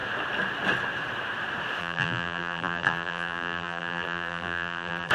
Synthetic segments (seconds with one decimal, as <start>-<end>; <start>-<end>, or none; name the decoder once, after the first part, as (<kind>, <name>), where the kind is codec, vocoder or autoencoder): 1.8-5.1 (vocoder, BigVGAN v2)